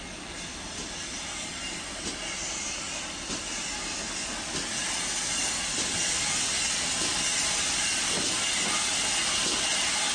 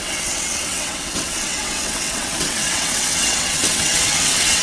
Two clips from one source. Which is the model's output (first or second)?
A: second